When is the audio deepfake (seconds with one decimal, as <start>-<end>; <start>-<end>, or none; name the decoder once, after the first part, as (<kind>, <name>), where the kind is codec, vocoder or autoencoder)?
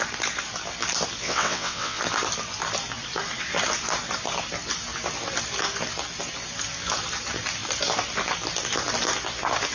1.2-2.0 (vocoder, WaveNeXt)